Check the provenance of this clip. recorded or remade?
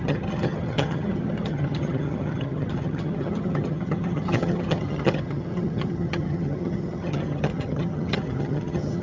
remade